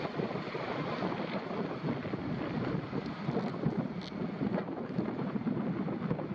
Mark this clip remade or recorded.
recorded